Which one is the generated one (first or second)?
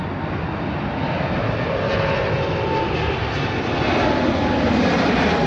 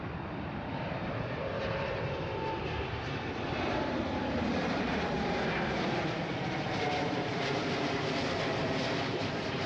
second